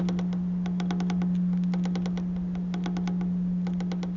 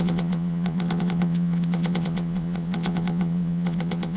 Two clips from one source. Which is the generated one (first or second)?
second